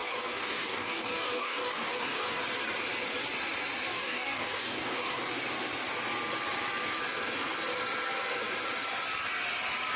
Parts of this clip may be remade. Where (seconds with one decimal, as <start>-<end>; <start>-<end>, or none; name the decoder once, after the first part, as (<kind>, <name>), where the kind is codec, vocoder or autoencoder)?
0.0-2.4 (codec, DAC); 3.9-5.2